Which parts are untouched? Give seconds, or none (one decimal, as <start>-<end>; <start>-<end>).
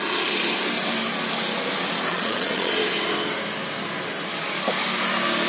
0.0-2.1; 2.7-5.5